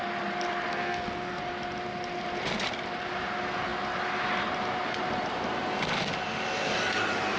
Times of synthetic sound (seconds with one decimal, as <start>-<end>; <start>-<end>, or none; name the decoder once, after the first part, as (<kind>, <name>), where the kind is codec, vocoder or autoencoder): 0.7-1.4 (codec, SNAC)